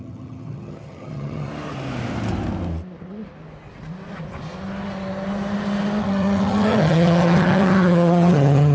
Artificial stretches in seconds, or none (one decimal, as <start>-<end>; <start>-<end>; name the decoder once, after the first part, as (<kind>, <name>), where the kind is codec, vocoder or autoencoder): 0.0-1.5 (vocoder, HiFi-GAN); 6.0-8.7